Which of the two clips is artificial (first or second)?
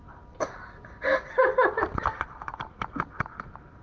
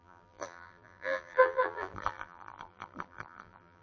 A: second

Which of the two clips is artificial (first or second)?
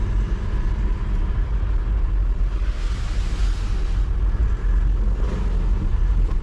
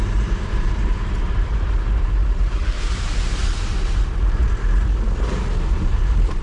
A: second